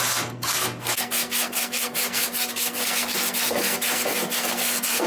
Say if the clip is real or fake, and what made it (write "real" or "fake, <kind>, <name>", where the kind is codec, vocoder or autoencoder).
fake, codec, SNAC